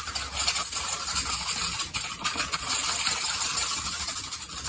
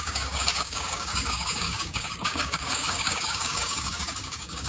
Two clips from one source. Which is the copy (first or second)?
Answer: second